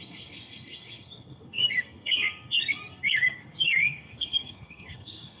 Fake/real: fake